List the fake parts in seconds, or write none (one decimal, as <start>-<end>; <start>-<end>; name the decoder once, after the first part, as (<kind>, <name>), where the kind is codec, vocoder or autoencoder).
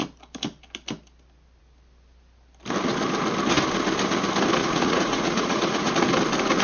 4.6-5.9 (vocoder, Vocos)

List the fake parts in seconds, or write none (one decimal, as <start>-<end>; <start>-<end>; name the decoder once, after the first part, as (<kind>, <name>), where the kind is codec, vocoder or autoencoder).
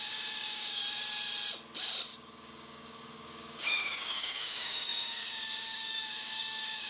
0.0-0.8 (codec, DAC); 2.1-6.9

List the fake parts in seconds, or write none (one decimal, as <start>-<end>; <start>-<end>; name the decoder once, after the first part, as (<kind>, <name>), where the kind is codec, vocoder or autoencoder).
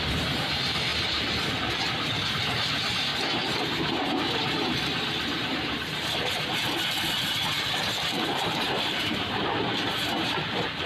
0.0-0.9 (vocoder, BigVGAN v2); 2.1-3.1; 6.4-10.9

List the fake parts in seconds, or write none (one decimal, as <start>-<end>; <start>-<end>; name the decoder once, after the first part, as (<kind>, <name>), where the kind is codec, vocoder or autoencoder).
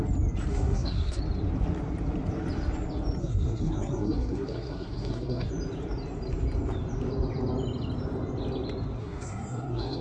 0.5-1.2 (codec, SNAC); 3.2-5.5; 9.0-10.0